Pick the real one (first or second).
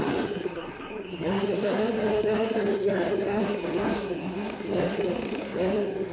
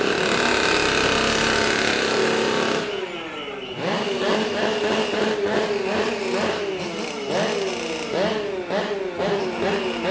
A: second